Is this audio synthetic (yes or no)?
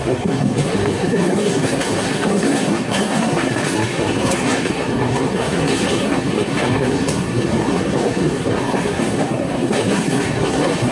yes